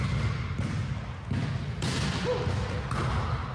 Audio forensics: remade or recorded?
recorded